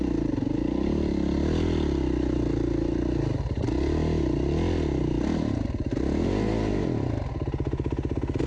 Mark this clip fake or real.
real